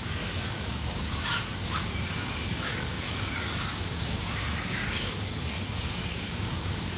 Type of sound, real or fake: fake